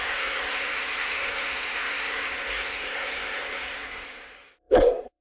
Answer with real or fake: fake